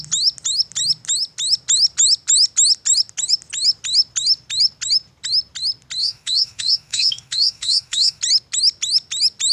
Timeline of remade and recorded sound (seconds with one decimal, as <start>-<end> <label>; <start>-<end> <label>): 0.0-6.0 recorded; 6.0-8.2 remade; 8.2-9.5 recorded